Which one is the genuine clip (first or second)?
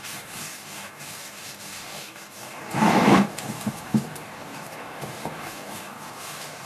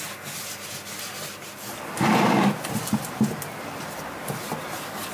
second